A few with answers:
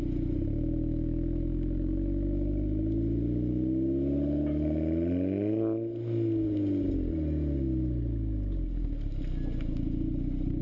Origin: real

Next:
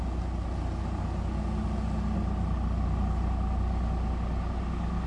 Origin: real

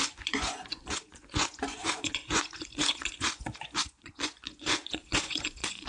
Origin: fake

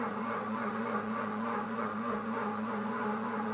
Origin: fake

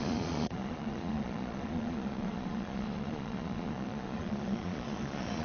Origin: fake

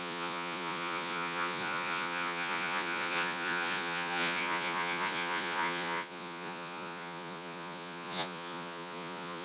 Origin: fake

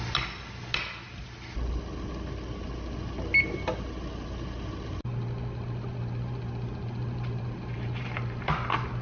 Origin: real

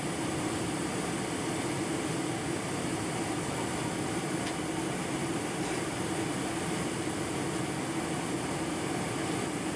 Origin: real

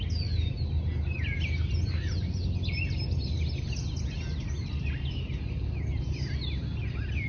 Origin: real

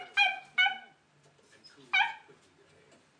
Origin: real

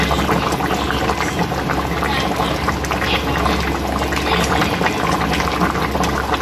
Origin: real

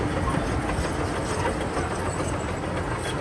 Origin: real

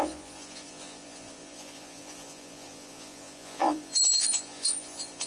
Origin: fake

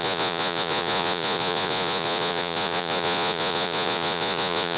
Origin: fake